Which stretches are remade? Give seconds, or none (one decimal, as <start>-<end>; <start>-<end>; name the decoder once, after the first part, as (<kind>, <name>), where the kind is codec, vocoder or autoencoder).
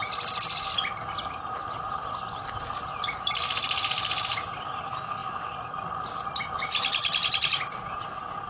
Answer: none